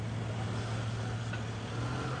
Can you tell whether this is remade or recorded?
recorded